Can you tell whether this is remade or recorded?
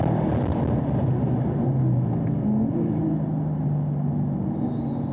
recorded